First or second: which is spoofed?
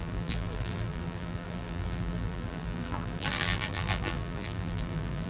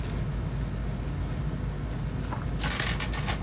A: first